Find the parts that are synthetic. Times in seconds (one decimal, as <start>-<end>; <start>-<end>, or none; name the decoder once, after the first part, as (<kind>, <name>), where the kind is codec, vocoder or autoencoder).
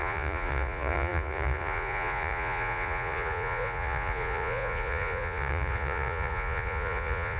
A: 0.0-7.4 (vocoder, Vocos)